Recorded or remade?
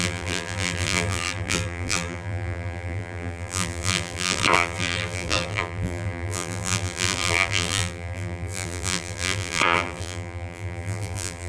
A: remade